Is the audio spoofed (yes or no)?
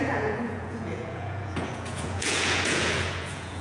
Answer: yes